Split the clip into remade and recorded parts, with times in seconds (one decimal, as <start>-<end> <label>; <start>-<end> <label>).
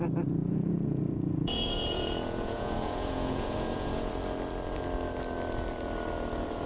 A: 0.0-0.4 recorded; 0.4-4.1 remade; 4.1-6.7 recorded